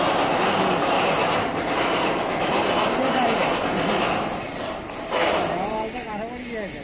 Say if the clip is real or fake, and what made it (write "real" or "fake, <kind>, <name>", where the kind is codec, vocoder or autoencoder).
real